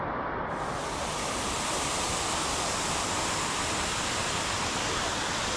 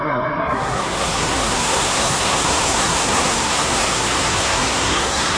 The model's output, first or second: second